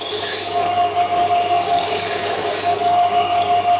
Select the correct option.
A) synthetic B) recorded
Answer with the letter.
A